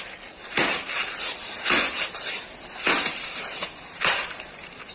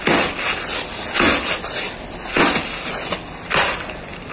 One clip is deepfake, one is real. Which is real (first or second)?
second